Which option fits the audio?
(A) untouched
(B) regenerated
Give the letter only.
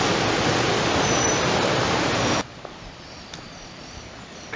A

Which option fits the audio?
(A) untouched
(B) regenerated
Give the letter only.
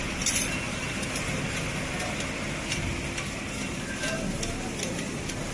A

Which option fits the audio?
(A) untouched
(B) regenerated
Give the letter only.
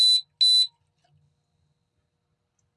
A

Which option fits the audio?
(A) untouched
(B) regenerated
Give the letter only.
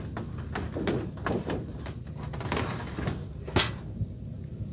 A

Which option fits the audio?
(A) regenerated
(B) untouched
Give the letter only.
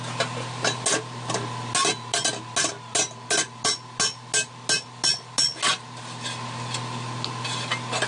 B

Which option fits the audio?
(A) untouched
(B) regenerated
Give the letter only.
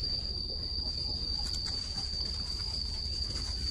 B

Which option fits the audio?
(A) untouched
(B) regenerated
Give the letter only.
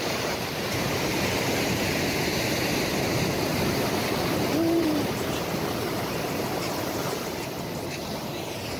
B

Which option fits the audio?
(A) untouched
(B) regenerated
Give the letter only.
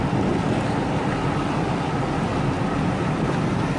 A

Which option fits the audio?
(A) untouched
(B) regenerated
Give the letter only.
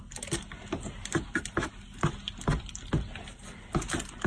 A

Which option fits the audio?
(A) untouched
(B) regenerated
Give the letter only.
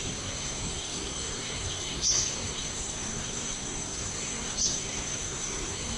B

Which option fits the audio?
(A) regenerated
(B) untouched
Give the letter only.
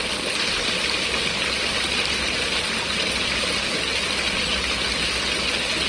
B